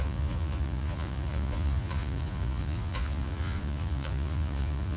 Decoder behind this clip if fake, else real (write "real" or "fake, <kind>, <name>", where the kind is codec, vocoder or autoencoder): fake, vocoder, Vocos